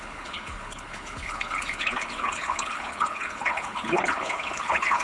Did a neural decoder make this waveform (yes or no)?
yes